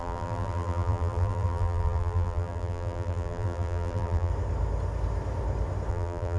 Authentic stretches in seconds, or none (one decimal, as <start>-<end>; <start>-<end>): 4.3-5.9